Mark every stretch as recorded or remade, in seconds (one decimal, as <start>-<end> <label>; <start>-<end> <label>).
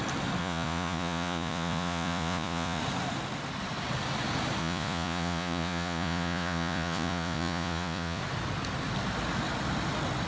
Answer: 0.0-0.4 recorded; 0.4-2.8 remade; 2.8-4.6 recorded; 4.6-8.2 remade; 8.2-10.3 recorded